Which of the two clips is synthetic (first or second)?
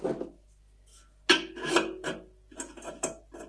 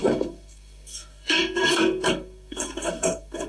second